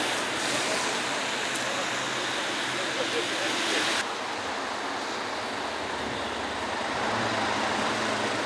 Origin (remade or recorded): recorded